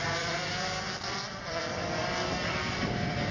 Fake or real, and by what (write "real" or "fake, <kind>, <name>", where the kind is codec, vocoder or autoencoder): fake, vocoder, BigVGAN v2